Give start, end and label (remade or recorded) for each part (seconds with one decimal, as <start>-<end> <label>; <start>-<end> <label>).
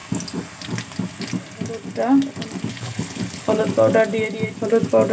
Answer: 0.0-2.7 recorded; 2.7-3.5 remade; 3.5-5.1 recorded